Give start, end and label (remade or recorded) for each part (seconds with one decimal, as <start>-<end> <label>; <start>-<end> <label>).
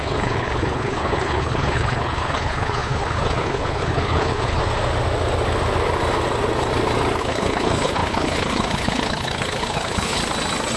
0.0-4.6 remade; 4.6-7.2 recorded; 7.2-10.2 remade; 10.2-10.8 recorded